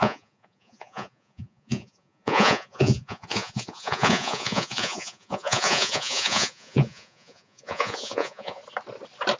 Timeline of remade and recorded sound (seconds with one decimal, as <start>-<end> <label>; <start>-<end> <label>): 0.0-8.6 remade; 8.6-9.4 recorded